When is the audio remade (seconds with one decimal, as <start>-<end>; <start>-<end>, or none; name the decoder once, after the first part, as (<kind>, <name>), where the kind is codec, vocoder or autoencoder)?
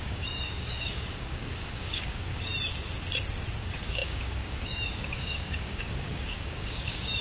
0.0-2.5 (codec, DAC); 3.6-7.2